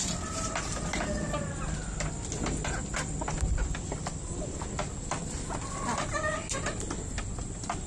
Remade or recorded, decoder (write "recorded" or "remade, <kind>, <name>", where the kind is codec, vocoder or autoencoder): recorded